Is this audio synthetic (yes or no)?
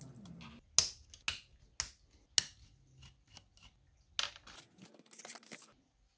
no